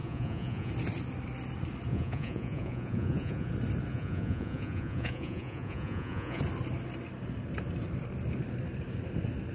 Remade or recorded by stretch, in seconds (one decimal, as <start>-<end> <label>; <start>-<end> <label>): 0.0-0.7 remade; 0.7-1.9 recorded; 1.9-3.5 remade; 3.5-3.9 recorded; 3.9-6.4 remade; 6.4-9.5 recorded